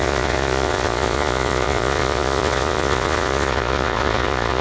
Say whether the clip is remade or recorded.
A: remade